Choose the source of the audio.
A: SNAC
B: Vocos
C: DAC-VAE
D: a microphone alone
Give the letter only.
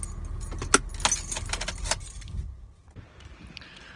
D